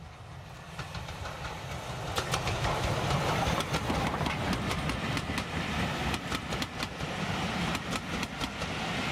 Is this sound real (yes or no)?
yes